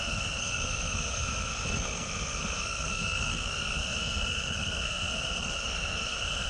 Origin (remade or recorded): remade